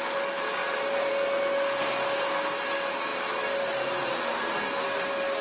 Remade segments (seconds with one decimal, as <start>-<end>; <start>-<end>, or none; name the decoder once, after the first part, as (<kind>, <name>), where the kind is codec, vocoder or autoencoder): none